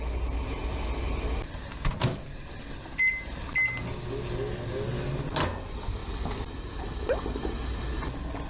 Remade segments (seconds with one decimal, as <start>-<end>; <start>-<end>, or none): none